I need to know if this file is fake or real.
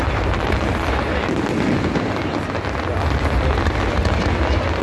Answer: real